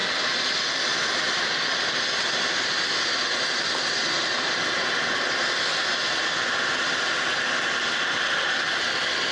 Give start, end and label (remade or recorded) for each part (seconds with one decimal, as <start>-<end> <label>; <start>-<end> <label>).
0.0-9.3 recorded